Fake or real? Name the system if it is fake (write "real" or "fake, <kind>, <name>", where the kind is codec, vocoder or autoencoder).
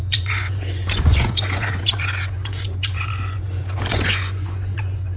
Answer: fake, vocoder, Vocos